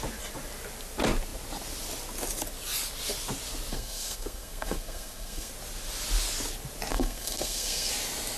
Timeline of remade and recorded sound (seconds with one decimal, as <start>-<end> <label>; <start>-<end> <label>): 0.0-3.7 recorded; 3.7-5.5 remade; 5.5-6.9 recorded; 6.9-7.9 remade; 7.9-8.4 recorded